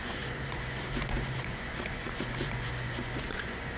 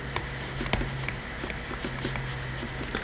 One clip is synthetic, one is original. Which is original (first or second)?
second